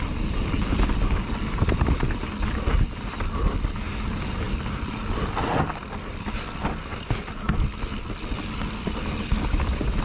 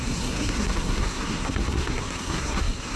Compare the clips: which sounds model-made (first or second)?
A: second